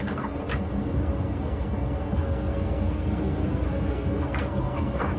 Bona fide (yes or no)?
no